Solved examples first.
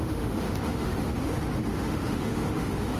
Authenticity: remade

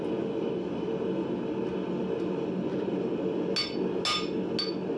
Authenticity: recorded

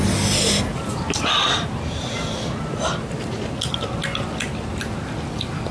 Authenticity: recorded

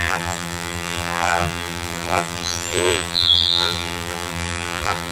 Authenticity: remade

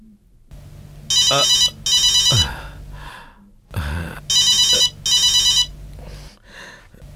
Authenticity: recorded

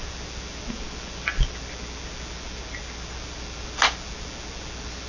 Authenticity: recorded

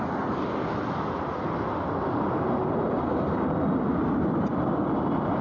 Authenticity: recorded